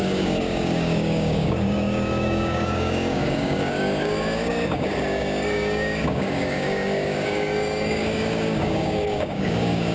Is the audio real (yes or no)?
no